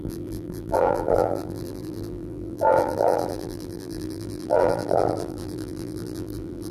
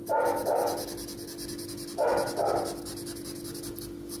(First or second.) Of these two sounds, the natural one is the second